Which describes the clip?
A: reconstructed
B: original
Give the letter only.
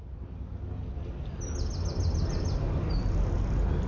B